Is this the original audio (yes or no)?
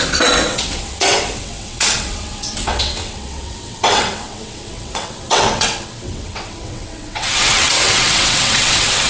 no